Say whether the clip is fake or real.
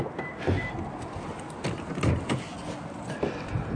real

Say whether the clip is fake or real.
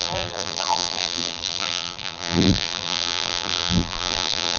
fake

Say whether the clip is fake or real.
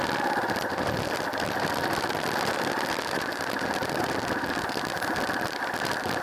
fake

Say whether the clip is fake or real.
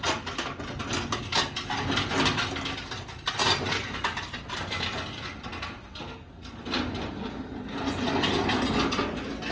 real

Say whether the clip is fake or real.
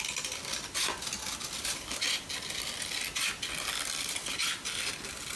real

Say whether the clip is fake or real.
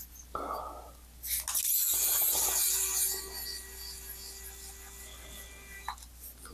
real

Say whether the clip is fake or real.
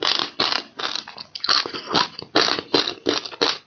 real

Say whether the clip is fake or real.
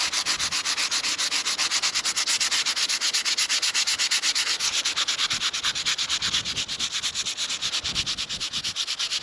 real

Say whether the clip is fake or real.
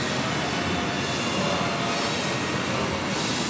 real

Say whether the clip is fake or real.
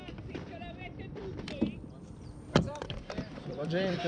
fake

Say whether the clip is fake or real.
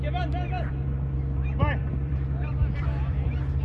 fake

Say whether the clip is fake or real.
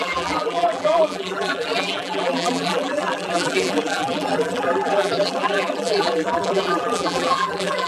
fake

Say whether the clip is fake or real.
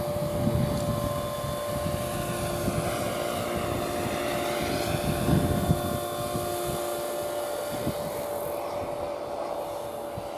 real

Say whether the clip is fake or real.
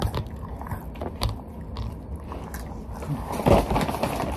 real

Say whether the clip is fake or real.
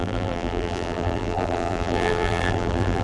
fake